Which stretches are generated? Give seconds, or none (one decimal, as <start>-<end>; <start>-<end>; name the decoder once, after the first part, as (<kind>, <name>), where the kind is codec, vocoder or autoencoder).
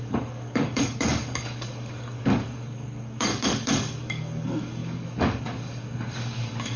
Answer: 0.0-6.8 (codec, DAC)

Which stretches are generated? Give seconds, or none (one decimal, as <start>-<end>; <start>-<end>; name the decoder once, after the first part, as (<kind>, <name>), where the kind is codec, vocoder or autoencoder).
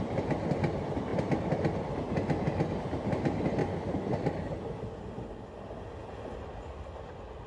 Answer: 3.6-4.3 (vocoder, BigVGAN v2)